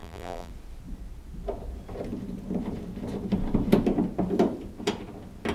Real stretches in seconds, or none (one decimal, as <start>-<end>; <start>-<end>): 0.5-5.5